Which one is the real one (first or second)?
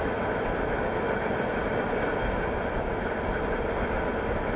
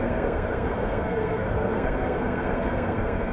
first